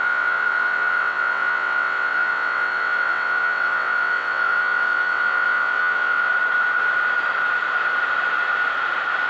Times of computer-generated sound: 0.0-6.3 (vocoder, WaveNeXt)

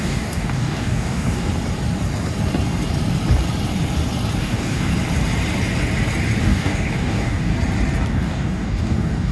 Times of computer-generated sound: 0.0-1.5 (codec, DAC); 4.4-4.9; 6.4-7.5; 8.1-9.3

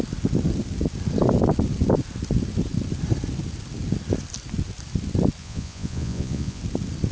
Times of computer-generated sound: 5.4-6.6 (vocoder, Vocos)

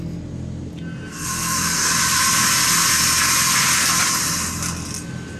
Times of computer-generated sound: 1.1-1.9 (codec, SNAC)